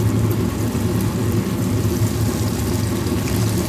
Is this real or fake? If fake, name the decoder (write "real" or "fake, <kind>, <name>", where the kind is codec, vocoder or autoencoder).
real